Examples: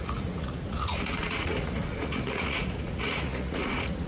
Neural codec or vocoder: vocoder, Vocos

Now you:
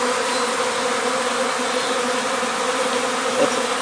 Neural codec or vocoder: none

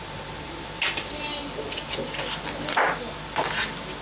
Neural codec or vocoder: none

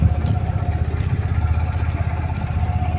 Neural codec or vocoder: none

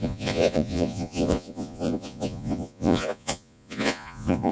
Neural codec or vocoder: vocoder, Vocos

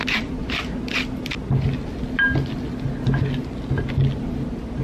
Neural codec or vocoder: none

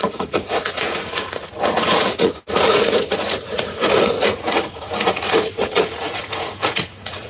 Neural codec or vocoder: vocoder, Vocos